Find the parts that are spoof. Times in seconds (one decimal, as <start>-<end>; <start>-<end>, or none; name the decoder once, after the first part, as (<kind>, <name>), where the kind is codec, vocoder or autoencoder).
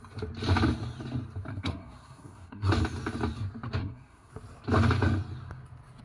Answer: 1.5-2.7 (codec, SNAC); 3.8-4.3